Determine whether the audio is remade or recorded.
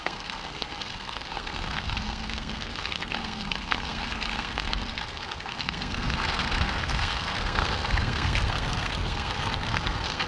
remade